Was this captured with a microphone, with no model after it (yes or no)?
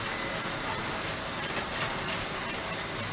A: yes